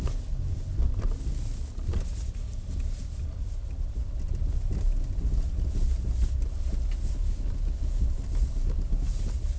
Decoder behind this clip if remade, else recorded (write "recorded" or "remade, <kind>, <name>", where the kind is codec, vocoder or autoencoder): recorded